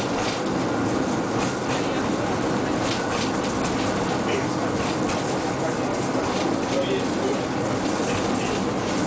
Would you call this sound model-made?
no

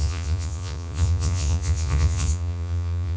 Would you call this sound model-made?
yes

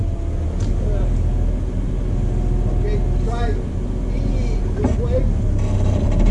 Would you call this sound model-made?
no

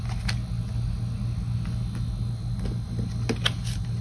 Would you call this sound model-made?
no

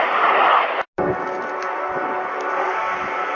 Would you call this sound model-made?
no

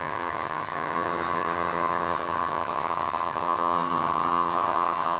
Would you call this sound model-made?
yes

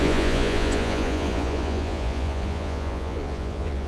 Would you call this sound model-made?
yes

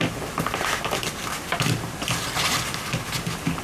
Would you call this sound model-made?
no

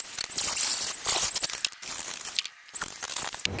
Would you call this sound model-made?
no